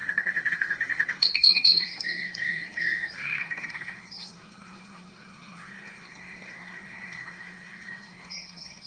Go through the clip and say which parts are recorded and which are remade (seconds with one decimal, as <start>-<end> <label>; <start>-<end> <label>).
0.0-8.9 remade